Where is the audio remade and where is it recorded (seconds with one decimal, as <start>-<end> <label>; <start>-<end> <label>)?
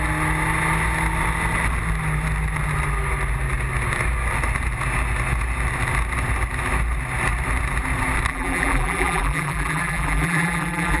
0.0-8.3 recorded; 8.3-11.0 remade